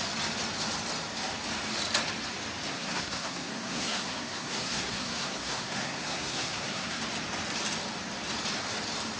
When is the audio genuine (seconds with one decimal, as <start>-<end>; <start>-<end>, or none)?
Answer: 0.0-2.7; 7.0-9.2